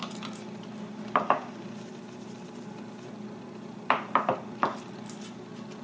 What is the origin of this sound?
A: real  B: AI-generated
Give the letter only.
A